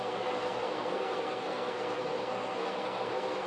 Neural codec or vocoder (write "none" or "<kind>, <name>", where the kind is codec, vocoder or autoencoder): codec, SNAC